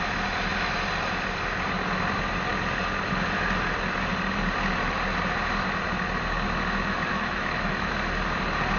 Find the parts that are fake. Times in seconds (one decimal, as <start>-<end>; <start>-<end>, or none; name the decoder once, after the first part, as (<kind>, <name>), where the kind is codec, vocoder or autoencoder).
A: 7.1-7.9 (autoencoder, DAC-VAE)